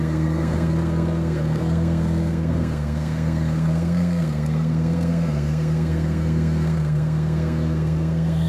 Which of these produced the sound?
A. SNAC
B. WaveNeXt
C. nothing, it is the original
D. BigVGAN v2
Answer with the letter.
A